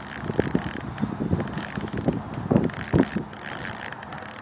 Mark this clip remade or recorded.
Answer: recorded